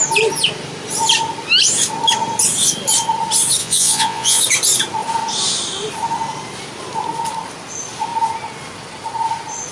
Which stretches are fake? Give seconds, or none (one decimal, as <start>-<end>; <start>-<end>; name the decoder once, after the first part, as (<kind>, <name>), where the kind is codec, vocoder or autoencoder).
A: 3.6-4.4 (vocoder, Vocos)